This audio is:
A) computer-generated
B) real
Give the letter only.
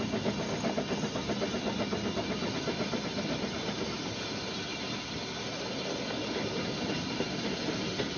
B